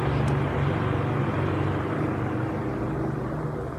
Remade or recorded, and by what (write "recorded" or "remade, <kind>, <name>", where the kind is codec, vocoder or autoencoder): recorded